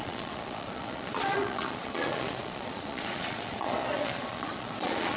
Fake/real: fake